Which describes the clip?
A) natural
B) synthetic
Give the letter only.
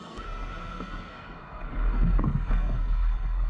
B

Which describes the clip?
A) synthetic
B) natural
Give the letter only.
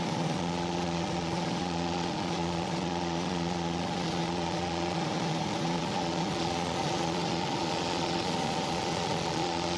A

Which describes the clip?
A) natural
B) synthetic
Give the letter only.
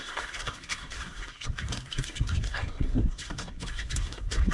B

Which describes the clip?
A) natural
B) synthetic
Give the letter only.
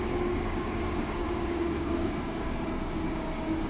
B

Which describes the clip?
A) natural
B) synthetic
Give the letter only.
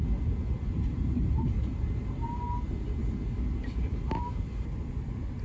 A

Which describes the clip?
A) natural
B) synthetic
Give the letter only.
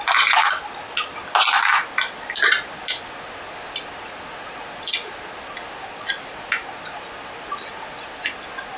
A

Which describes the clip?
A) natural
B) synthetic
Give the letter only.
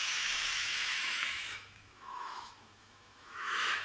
B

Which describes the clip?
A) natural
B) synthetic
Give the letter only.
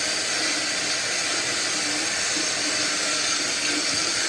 A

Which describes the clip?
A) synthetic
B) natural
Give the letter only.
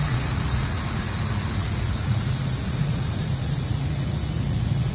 A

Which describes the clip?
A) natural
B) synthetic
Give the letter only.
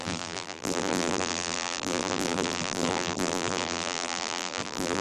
B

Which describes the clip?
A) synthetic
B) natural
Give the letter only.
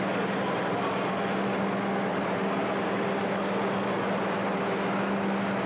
B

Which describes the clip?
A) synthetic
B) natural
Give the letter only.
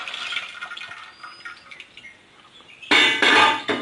B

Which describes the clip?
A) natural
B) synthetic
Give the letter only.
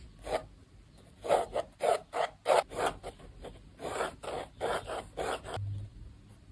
A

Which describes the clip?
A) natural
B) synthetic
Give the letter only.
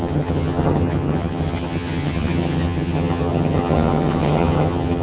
B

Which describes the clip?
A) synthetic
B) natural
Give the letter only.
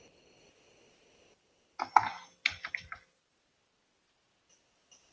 B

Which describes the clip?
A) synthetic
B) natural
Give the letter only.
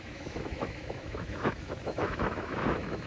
A